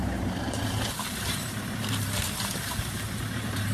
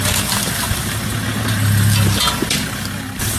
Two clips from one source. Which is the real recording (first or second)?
second